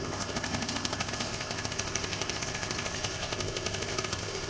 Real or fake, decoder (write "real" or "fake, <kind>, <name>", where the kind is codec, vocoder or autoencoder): fake, codec, ZipCodec